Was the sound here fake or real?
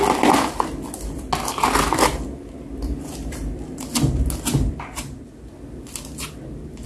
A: real